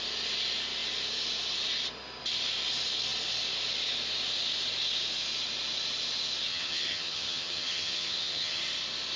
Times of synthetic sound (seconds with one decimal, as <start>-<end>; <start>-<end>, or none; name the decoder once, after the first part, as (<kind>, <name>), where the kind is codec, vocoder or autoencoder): 6.5-8.6 (vocoder, HiFi-GAN)